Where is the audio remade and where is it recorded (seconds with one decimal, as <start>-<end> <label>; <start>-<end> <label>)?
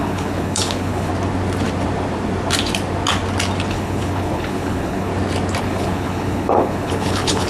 0.0-1.1 remade; 1.1-3.7 recorded; 3.7-5.1 remade; 5.1-5.6 recorded; 5.6-7.5 remade